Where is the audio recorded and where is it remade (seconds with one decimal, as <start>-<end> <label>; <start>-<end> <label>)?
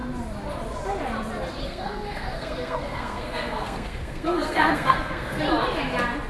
0.0-1.6 recorded; 1.6-5.4 remade; 5.4-6.3 recorded